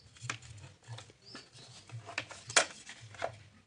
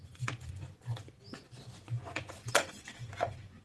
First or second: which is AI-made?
second